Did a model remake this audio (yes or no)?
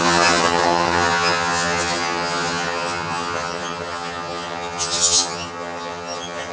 yes